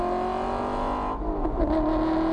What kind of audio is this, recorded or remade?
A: recorded